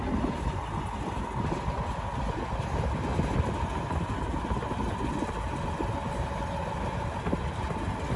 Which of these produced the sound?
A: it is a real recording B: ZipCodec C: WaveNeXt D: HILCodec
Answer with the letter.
A